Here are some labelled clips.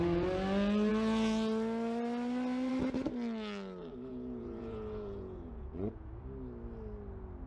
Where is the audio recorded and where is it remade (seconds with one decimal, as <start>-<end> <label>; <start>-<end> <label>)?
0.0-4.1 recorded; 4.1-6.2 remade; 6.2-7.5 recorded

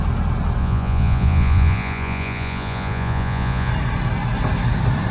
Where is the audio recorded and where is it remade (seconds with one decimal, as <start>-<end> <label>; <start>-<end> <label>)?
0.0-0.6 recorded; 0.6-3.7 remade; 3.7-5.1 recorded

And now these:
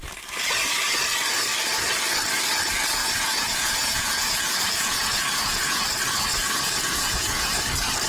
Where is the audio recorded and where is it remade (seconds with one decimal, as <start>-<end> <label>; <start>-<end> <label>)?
0.0-3.0 recorded; 3.0-5.8 remade; 5.8-6.3 recorded; 6.3-7.6 remade; 7.6-8.1 recorded

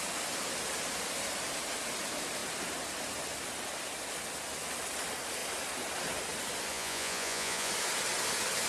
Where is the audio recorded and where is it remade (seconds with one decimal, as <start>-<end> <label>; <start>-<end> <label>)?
0.0-6.7 recorded; 6.7-7.7 remade; 7.7-8.7 recorded

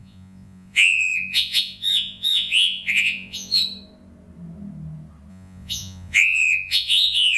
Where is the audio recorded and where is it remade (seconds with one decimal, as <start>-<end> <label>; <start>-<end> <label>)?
0.0-3.6 remade; 3.6-5.3 recorded; 5.3-7.4 remade

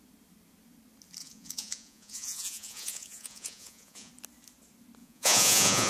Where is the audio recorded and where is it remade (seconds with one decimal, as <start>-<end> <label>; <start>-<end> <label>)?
0.0-1.2 recorded; 1.2-4.1 remade; 4.1-5.0 recorded; 5.0-5.9 remade

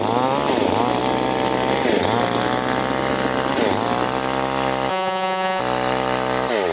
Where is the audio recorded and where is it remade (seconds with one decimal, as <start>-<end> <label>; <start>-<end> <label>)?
0.0-4.9 recorded; 4.9-5.6 remade; 5.6-6.7 recorded